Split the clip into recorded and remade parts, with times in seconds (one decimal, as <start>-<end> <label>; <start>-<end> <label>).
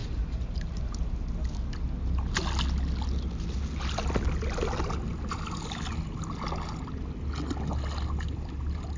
0.0-1.2 remade; 1.2-9.0 recorded